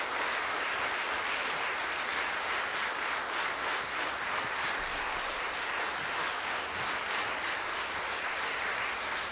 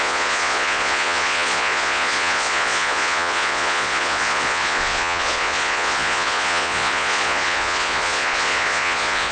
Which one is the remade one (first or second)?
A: second